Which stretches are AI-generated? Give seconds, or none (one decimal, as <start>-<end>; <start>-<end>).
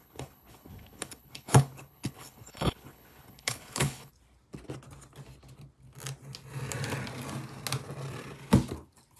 0.0-4.1